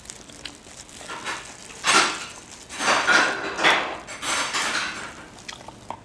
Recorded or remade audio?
recorded